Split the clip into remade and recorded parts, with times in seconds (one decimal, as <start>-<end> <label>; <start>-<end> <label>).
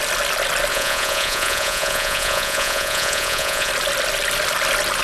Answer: 0.0-0.7 recorded; 0.7-3.7 remade; 3.7-5.0 recorded